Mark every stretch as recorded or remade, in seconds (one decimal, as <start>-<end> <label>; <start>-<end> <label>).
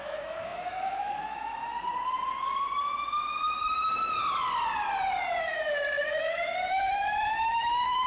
0.0-1.6 remade; 1.6-5.4 recorded; 5.4-8.1 remade